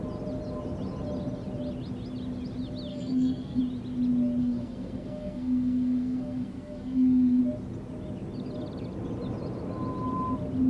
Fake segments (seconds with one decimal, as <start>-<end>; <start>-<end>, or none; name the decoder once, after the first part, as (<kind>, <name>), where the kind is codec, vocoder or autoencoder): 2.9-3.6 (codec, SNAC); 4.4-7.4